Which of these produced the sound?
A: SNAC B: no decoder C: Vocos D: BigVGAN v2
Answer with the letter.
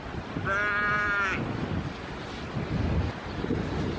B